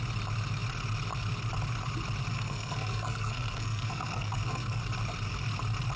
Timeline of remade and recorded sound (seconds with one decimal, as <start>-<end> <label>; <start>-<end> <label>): 0.0-2.3 recorded; 2.3-4.8 remade; 4.8-6.0 recorded